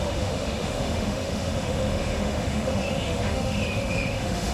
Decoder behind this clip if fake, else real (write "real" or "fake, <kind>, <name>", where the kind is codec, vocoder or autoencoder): fake, autoencoder, DAC-VAE